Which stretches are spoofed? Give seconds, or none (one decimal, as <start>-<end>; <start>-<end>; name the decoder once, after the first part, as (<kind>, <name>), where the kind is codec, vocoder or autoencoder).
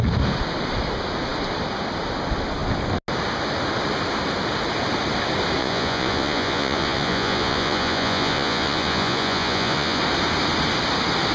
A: 5.6-10.0 (vocoder, Vocos)